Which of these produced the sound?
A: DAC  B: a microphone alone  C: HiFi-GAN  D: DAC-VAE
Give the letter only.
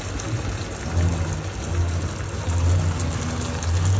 B